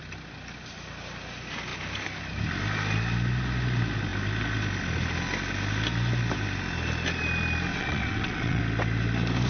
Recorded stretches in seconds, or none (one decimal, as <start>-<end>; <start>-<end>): 0.0-7.7; 8.6-9.5